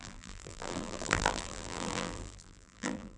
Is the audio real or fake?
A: fake